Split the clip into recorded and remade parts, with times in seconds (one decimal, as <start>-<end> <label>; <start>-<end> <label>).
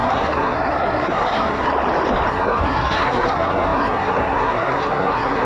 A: 0.0-1.7 remade; 1.7-2.3 recorded; 2.3-5.5 remade